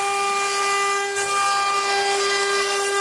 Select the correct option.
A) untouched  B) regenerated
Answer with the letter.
A